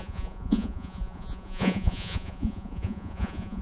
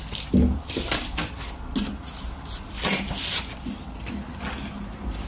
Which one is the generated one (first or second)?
first